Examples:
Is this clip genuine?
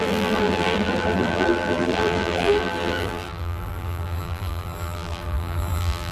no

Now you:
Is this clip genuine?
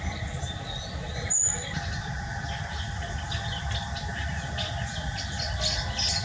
yes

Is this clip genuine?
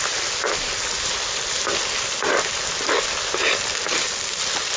yes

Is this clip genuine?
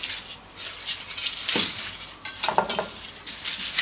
yes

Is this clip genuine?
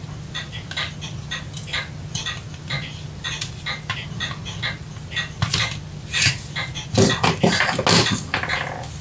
yes